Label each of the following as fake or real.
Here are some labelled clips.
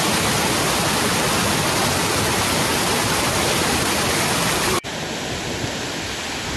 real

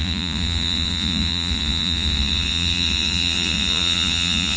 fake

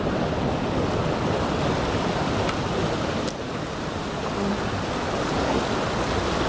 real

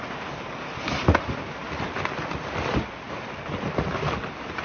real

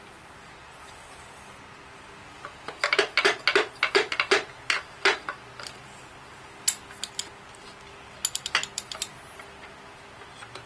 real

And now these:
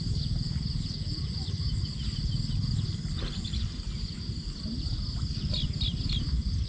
real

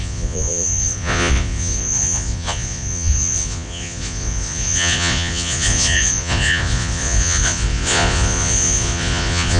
fake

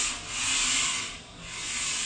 real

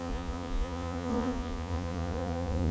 fake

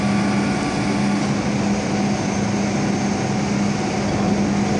real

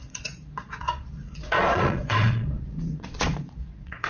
fake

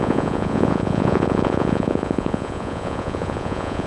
fake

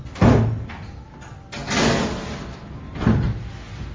real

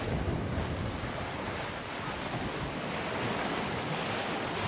real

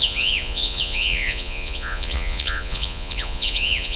fake